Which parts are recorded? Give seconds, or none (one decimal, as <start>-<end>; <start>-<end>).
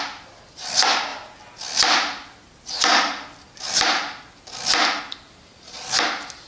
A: 0.0-6.5